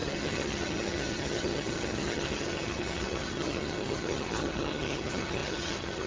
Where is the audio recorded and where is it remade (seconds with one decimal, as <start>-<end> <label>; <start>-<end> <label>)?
0.0-6.1 remade